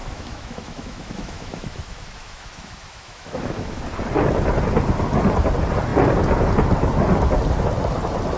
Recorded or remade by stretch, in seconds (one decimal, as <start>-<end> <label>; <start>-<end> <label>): 0.0-3.8 remade; 3.8-8.4 recorded